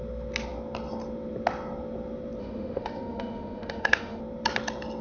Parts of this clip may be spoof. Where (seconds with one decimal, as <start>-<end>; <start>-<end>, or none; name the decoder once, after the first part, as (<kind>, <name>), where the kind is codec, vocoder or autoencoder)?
2.4-4.2 (autoencoder, DAC-VAE)